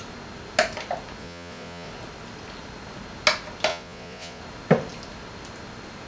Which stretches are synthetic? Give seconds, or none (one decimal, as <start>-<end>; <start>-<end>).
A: 1.2-1.9; 3.7-4.4